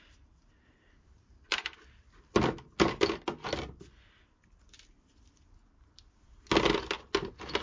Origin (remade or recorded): recorded